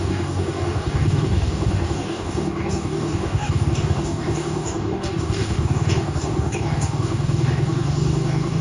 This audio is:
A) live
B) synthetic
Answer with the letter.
B